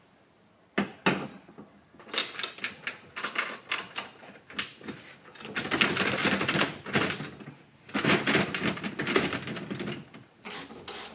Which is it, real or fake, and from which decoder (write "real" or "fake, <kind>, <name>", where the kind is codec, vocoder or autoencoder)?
real